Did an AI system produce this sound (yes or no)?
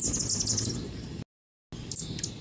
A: no